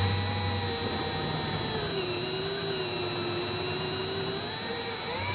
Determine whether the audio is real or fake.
real